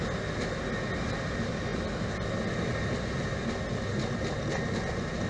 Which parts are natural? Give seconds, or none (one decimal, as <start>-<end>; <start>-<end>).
0.0-5.3